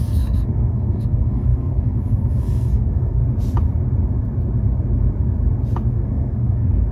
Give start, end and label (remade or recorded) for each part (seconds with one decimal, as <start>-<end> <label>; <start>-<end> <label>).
0.0-3.2 remade; 3.2-5.9 recorded; 5.9-6.9 remade